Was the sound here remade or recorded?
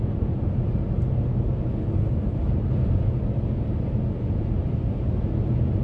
recorded